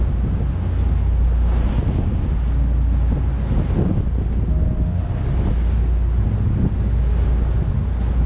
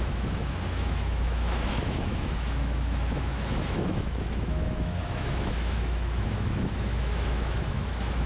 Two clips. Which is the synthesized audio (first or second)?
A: second